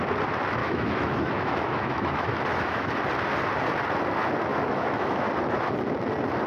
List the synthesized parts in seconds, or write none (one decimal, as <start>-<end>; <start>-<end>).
0.6-2.9; 4.5-5.3